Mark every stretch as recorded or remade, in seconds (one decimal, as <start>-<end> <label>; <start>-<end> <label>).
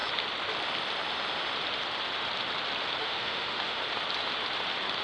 0.0-3.0 recorded; 3.0-3.8 remade; 3.8-5.0 recorded